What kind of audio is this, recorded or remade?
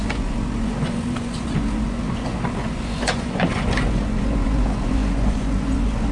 remade